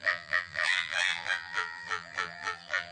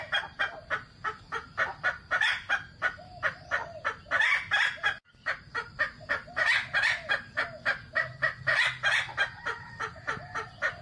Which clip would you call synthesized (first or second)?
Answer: first